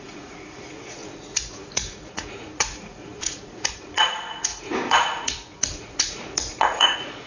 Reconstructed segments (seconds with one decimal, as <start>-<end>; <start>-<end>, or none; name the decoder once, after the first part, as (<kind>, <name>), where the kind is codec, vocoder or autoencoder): 0.0-7.3 (vocoder, Vocos)